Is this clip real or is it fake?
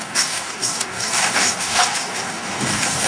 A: fake